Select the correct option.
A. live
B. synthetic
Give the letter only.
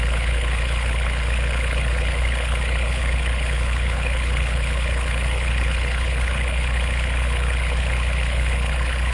B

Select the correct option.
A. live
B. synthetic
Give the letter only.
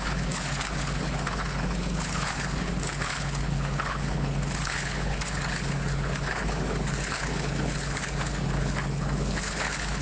B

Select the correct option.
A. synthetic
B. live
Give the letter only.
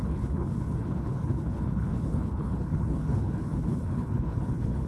A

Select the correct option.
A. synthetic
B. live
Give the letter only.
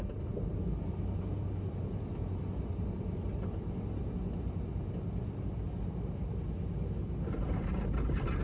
B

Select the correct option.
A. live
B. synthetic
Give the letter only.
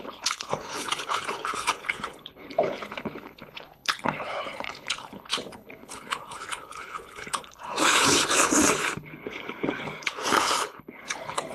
B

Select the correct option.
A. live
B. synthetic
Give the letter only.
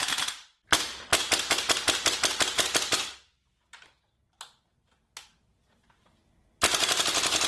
A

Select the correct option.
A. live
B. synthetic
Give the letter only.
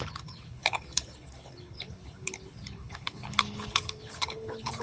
B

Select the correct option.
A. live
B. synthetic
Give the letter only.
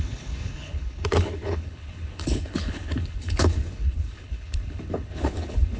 B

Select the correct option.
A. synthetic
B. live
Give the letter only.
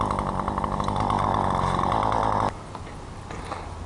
B